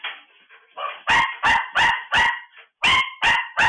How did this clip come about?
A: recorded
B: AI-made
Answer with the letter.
A